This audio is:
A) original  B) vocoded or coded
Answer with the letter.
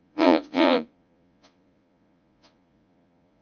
B